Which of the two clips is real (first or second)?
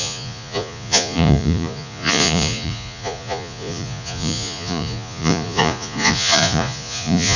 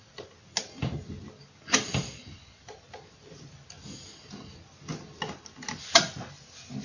second